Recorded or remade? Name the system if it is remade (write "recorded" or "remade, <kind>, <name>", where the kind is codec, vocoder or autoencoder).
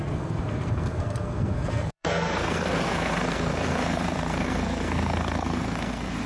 remade, codec, SNAC